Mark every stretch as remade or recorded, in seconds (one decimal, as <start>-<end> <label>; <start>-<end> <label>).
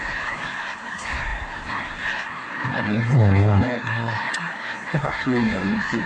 0.0-6.1 remade